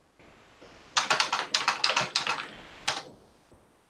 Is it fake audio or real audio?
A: real